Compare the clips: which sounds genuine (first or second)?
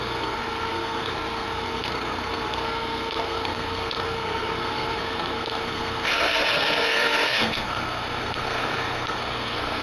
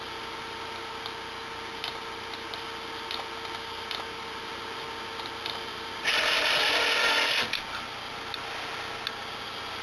second